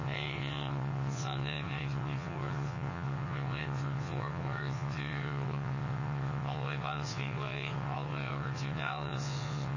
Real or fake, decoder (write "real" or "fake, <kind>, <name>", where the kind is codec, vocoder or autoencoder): fake, vocoder, WaveNeXt